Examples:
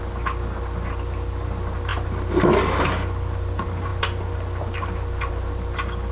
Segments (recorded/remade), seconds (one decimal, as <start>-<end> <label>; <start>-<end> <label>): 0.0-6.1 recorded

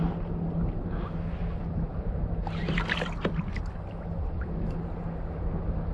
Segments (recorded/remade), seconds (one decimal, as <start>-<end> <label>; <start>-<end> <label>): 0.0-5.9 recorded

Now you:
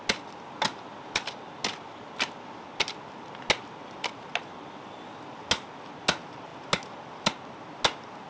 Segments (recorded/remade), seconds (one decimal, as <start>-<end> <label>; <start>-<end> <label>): 0.0-8.3 recorded

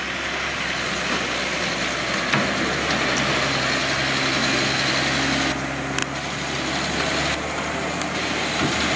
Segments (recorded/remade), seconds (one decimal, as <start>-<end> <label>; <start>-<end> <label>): 0.0-9.0 recorded